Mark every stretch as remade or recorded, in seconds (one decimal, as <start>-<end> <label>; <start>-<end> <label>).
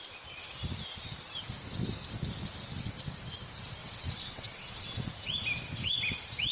0.0-3.8 recorded; 3.8-5.1 remade; 5.1-6.5 recorded